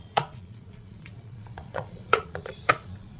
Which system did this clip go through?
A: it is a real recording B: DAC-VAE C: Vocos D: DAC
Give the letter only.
C